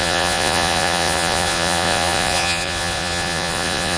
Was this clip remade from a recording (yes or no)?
yes